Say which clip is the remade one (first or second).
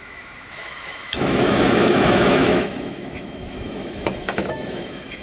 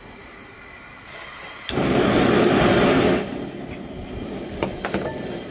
first